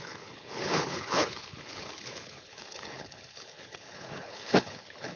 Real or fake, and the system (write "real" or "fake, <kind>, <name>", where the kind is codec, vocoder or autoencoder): fake, codec, HILCodec